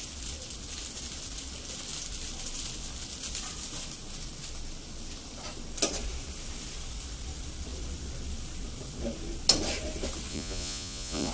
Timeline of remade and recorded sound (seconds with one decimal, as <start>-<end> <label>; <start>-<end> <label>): 0.0-10.3 recorded; 10.3-11.3 remade